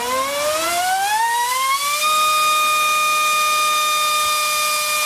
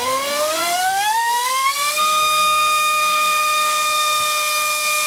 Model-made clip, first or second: second